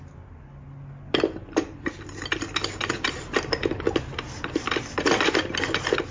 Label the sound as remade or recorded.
recorded